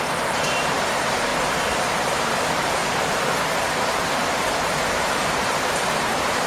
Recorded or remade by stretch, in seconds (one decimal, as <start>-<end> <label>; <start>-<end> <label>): 0.0-2.8 remade; 2.8-3.6 recorded; 3.6-6.5 remade